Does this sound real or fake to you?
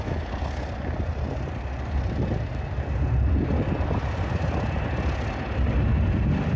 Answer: real